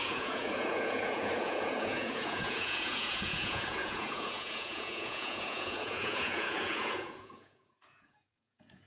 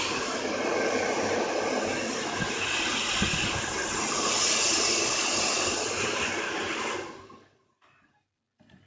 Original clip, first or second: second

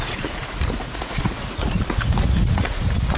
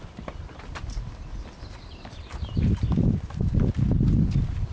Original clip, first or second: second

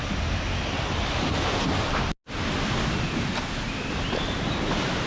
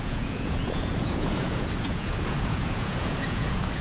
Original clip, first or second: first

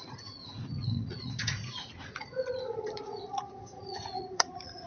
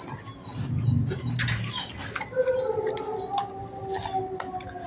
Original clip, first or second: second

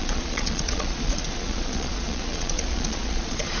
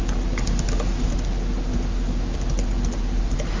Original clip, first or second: second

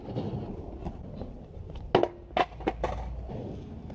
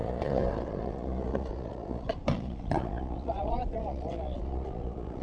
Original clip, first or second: first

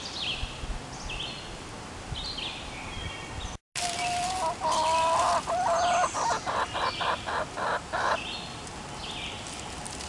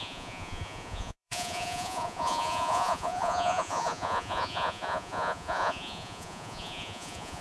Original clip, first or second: first